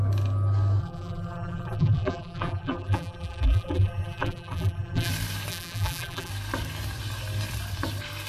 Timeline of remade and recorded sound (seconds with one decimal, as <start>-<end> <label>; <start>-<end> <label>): 0.0-0.8 recorded; 0.8-5.1 remade; 5.1-5.5 recorded; 5.5-6.3 remade; 6.3-8.3 recorded